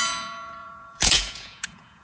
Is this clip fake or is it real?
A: fake